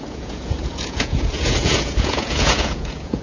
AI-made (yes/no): yes